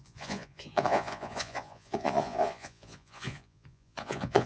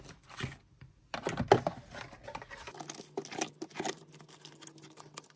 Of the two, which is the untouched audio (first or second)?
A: second